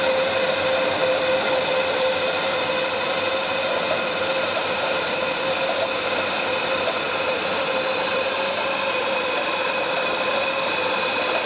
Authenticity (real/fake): real